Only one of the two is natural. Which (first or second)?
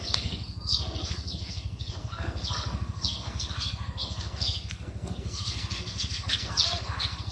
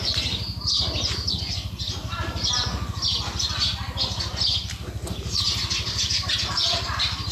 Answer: second